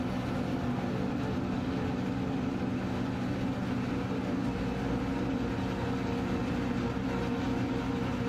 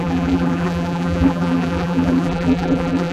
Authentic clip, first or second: first